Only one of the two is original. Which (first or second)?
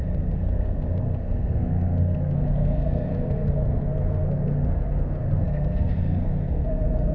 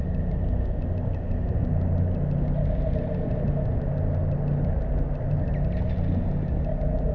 second